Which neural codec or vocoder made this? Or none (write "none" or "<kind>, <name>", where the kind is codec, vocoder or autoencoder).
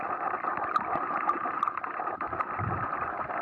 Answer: none